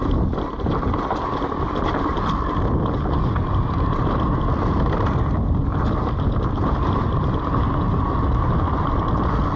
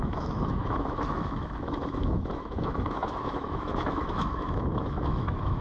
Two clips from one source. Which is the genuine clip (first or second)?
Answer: first